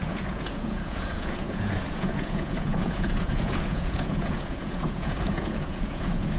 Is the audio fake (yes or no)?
yes